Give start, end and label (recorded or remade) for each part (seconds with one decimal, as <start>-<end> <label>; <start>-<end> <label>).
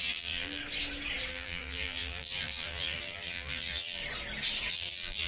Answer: 0.0-0.6 remade; 0.6-1.3 recorded; 1.3-4.0 remade; 4.0-4.7 recorded; 4.7-5.3 remade